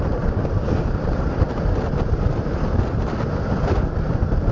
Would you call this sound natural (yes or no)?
yes